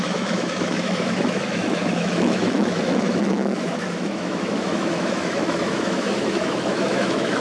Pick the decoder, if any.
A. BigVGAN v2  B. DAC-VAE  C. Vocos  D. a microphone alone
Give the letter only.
B